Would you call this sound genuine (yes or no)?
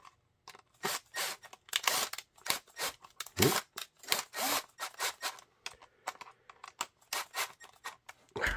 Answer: yes